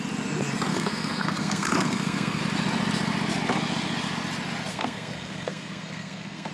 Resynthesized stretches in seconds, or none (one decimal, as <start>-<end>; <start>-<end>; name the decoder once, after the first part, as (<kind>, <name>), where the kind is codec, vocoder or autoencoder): 0.7-2.4 (codec, SNAC); 4.7-6.5